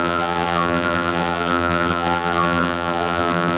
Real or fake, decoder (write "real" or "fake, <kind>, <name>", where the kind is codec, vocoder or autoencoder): fake, vocoder, BigVGAN v2